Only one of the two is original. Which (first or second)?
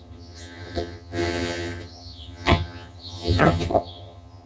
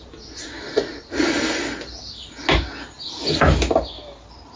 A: second